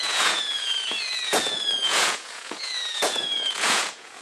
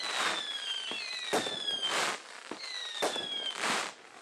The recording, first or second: second